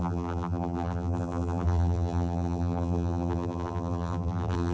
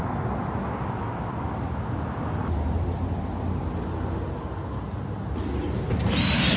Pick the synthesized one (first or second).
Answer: first